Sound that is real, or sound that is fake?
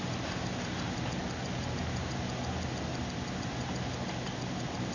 real